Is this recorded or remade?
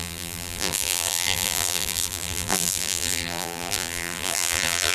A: remade